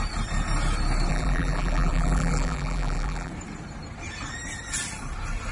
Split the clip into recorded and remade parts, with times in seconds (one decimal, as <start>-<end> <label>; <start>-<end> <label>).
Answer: 0.0-1.1 recorded; 1.1-3.3 remade; 3.3-5.5 recorded